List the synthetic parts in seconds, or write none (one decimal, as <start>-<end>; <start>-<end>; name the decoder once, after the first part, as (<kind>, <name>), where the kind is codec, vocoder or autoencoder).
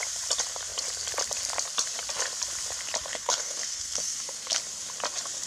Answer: 3.1-4.6 (codec, SNAC)